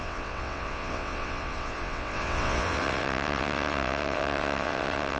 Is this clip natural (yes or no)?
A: no